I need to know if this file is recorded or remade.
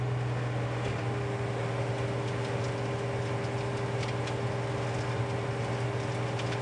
recorded